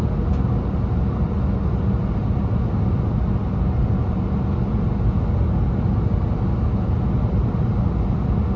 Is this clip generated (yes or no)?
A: no